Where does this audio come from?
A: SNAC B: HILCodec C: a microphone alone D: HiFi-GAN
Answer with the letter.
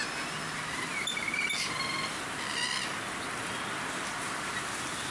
C